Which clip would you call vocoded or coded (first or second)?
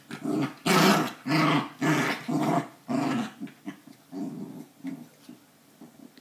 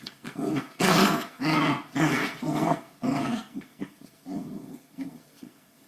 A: second